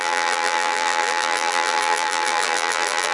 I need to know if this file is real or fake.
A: fake